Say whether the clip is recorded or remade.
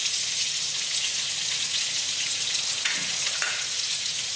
remade